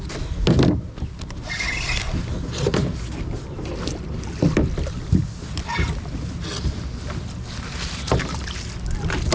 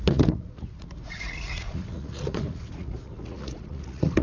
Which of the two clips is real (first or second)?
first